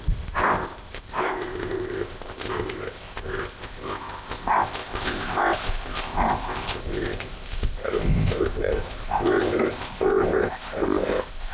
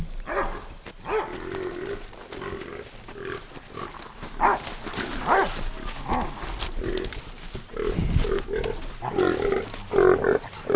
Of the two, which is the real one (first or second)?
second